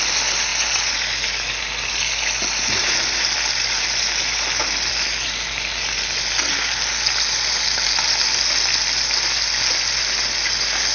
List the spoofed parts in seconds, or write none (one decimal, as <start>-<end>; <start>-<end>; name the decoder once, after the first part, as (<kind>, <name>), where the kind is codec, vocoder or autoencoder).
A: none